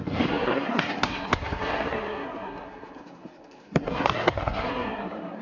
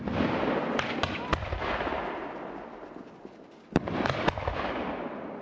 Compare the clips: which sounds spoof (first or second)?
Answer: first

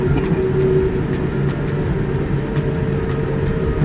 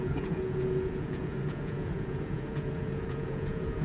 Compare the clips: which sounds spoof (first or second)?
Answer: second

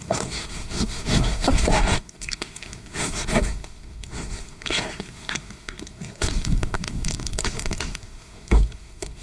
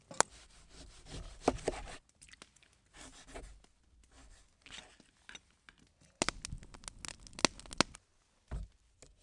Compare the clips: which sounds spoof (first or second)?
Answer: first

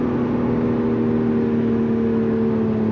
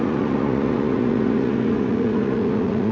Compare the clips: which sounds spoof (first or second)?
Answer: second